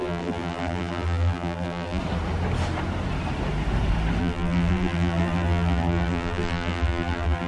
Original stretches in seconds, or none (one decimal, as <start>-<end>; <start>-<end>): 2.0-4.2